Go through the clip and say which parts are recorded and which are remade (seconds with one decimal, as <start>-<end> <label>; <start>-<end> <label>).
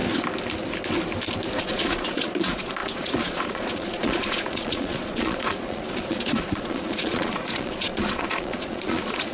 0.0-1.6 recorded; 1.6-9.3 remade